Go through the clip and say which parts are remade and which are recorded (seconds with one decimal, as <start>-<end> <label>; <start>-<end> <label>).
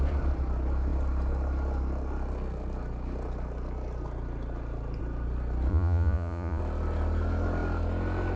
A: 0.0-5.7 recorded; 5.7-6.6 remade; 6.6-8.4 recorded